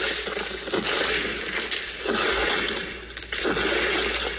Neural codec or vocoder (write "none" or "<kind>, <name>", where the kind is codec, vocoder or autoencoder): none